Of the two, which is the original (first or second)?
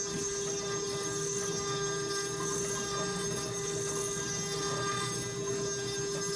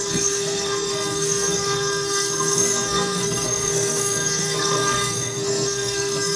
first